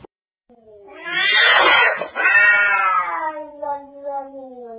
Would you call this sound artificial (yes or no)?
yes